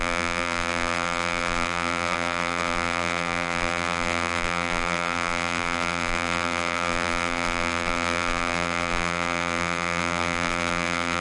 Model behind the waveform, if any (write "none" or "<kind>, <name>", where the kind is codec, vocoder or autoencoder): vocoder, BigVGAN v2